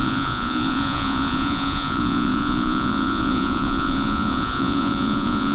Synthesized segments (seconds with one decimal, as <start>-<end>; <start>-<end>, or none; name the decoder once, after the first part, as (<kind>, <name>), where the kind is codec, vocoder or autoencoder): 0.0-5.5 (vocoder, Vocos)